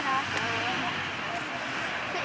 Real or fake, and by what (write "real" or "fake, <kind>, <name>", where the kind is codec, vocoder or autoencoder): real